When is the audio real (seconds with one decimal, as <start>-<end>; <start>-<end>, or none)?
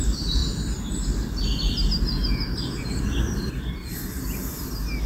0.0-5.1